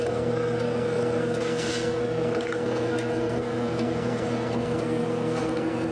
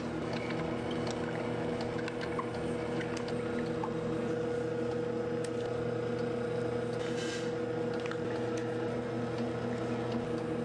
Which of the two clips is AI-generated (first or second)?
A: first